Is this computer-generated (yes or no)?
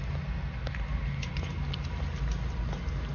no